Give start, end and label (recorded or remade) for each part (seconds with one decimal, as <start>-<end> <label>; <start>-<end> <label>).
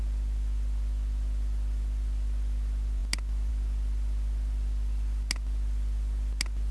0.0-6.7 recorded